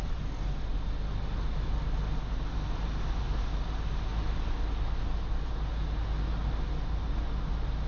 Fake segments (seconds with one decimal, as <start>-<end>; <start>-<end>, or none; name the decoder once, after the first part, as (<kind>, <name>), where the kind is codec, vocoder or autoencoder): none